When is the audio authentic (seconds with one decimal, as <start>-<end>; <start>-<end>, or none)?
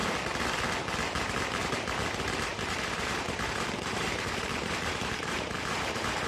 0.0-2.5